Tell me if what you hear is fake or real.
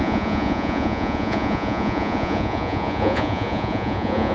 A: fake